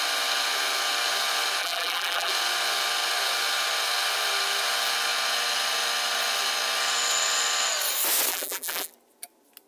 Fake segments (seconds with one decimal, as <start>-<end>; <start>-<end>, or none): 1.6-2.3; 8.3-8.9